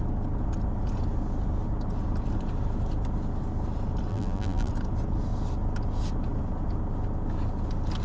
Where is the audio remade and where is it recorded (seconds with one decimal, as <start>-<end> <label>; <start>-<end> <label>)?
0.0-4.1 recorded; 4.1-4.7 remade; 4.7-8.0 recorded